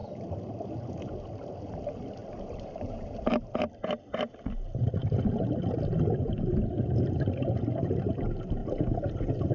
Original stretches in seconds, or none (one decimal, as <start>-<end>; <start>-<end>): 0.0-2.2; 3.8-9.5